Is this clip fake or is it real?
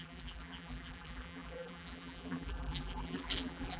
fake